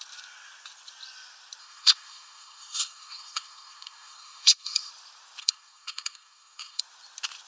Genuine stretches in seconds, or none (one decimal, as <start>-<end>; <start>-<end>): 0.0-1.6; 4.9-5.4; 6.8-7.5